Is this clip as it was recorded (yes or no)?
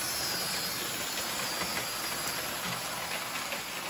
yes